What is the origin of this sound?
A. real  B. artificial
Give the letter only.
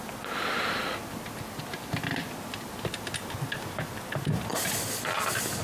A